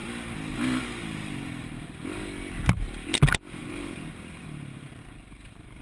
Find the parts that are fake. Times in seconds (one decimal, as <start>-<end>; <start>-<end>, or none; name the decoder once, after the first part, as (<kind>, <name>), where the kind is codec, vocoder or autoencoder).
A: 3.6-5.0 (vocoder, BigVGAN v2)